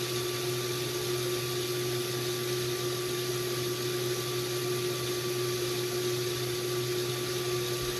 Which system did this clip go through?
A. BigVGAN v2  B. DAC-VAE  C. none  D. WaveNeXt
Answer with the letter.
C